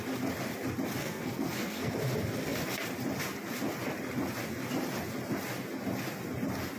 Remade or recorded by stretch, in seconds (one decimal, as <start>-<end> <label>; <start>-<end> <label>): 0.0-1.0 recorded; 1.0-1.9 remade; 1.9-6.8 recorded